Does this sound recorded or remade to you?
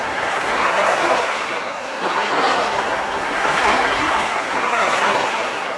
remade